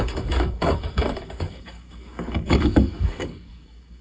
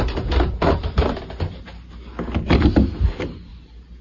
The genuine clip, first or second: second